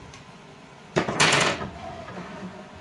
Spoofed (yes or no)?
yes